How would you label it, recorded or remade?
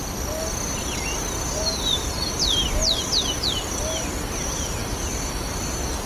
recorded